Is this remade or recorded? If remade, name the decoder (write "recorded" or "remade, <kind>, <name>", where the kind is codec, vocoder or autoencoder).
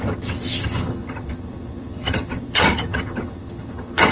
remade, vocoder, HiFi-GAN